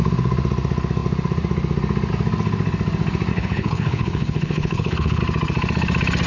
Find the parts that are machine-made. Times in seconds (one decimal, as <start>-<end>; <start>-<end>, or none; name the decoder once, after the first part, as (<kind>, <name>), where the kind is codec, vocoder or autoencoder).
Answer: 3.3-5.2 (codec, HILCodec)